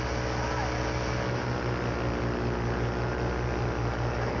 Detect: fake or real real